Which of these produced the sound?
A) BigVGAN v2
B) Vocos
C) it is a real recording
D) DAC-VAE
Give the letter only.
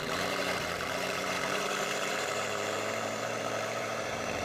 A